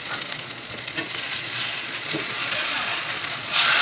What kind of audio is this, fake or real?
fake